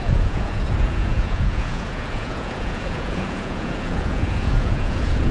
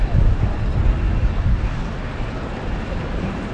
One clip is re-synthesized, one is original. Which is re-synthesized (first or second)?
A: first